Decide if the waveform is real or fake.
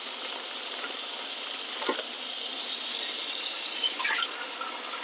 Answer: real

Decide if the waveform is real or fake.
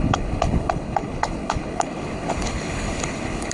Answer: fake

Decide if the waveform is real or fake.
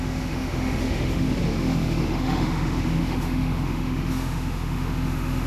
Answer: fake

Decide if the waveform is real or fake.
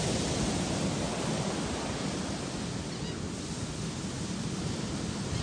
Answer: real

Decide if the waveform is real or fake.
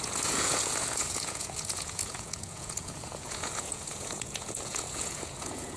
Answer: fake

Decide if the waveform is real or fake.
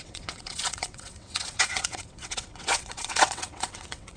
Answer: fake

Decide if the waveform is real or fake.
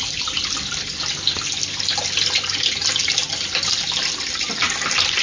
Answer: real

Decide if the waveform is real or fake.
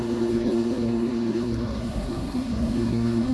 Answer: fake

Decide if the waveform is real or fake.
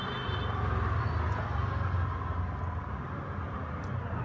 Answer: real